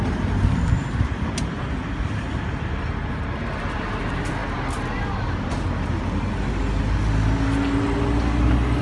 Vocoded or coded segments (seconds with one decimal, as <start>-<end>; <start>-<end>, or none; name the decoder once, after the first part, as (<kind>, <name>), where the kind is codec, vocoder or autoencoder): none